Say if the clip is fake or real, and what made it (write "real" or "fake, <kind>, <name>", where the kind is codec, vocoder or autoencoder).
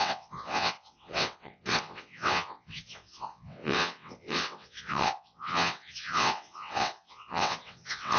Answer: fake, vocoder, WaveNeXt